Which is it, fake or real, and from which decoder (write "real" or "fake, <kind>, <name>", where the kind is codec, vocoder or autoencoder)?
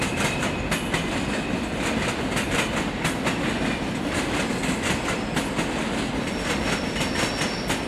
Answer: real